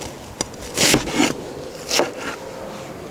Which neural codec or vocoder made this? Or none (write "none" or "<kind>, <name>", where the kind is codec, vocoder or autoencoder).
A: none